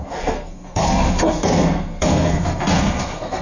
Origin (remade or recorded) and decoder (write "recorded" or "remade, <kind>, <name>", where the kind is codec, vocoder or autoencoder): remade, codec, SNAC